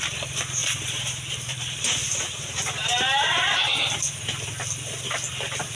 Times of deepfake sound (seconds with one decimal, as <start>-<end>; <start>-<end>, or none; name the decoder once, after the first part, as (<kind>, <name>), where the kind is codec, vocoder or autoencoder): 0.6-4.0 (vocoder, BigVGAN v2)